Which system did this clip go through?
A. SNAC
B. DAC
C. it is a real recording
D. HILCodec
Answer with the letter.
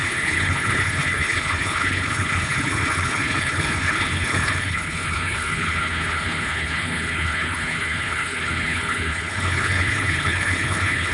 D